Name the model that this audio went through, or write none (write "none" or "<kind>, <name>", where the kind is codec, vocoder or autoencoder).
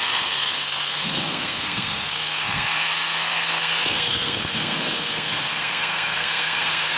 codec, SNAC